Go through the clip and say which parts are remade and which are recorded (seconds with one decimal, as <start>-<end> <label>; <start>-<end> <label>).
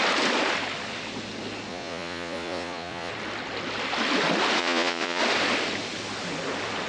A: 0.0-1.7 recorded; 1.7-3.1 remade; 3.1-4.6 recorded; 4.6-5.2 remade; 5.2-6.9 recorded